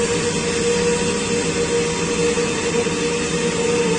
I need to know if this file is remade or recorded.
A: recorded